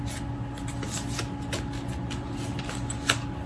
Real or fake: real